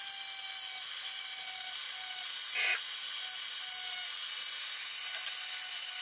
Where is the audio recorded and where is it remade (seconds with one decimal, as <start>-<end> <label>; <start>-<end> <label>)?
0.0-6.0 recorded